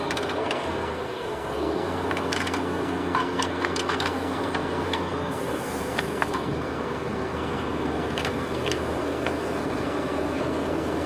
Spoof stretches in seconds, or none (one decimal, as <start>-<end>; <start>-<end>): 0.0-11.1